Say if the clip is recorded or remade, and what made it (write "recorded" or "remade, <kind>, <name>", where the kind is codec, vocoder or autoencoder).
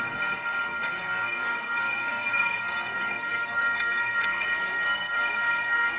remade, codec, SNAC